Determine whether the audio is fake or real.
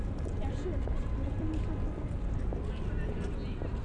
real